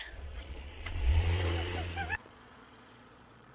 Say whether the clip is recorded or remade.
remade